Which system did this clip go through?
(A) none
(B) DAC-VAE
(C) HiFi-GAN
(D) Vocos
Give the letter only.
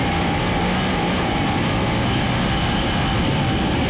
A